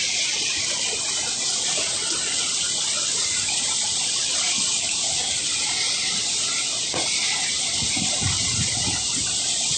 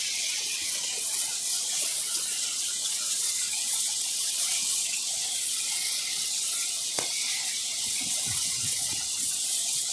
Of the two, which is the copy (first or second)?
second